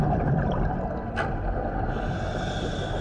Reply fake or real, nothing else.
real